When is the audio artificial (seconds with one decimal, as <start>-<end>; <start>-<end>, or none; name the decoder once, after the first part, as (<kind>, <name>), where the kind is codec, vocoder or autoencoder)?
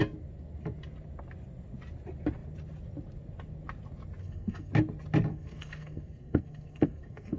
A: 4.2-4.7 (codec, SNAC); 5.3-7.4